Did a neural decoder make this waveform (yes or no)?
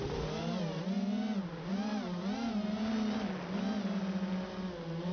no